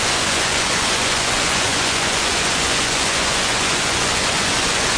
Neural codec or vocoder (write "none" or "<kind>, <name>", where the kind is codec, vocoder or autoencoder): vocoder, Vocos